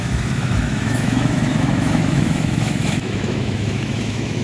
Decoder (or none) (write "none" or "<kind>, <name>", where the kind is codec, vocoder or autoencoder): autoencoder, DAC-VAE